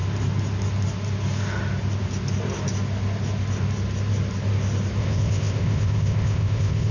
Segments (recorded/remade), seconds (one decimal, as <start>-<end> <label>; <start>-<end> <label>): 0.0-5.0 recorded; 5.0-6.9 remade